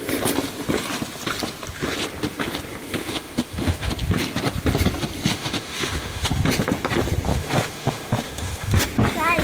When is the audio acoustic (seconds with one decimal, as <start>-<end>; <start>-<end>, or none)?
0.0-3.0; 3.9-5.3; 6.3-7.3; 8.8-9.4